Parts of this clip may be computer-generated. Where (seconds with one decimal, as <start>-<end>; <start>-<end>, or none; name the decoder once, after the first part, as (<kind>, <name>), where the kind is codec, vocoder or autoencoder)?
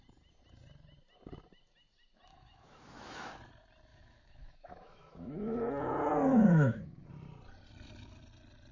2.3-3.3 (autoencoder, DAC-VAE); 3.9-5.6; 6.3-7.1